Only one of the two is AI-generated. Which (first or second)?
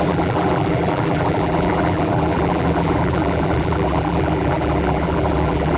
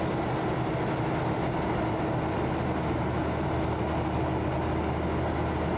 first